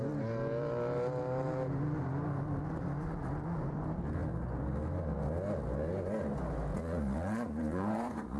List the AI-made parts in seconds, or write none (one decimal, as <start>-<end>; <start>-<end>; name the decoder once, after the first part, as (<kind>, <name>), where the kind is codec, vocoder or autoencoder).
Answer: 6.7-8.4 (vocoder, Vocos)